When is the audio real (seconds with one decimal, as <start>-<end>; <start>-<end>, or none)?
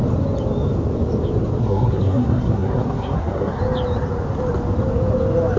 0.0-1.6; 3.6-5.6